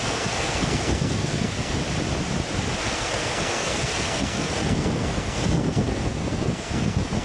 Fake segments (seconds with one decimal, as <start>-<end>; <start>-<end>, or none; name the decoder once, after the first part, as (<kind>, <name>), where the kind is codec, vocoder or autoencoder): 0.0-1.8 (codec, SNAC); 2.8-7.2

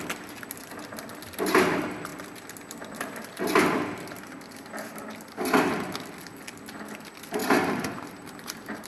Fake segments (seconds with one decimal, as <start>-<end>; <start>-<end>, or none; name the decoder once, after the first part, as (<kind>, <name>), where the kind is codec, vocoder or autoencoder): 7.4-8.9 (vocoder, BigVGAN v2)

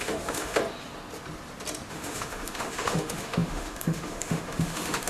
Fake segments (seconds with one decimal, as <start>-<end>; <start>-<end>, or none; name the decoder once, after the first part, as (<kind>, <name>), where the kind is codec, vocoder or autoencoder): 0.0-0.6 (autoencoder, DAC-VAE); 1.9-5.1

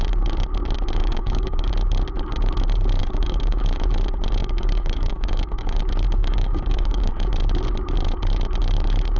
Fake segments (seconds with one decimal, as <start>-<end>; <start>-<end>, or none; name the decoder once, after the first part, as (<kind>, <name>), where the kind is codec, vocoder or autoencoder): 1.0-1.7 (codec, DAC); 3.0-3.6; 4.4-5.8; 6.2-7.1

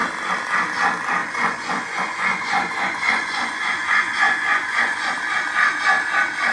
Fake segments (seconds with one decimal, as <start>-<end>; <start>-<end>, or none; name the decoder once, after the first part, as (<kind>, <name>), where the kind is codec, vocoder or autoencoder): 1.2-5.1 (vocoder, Vocos)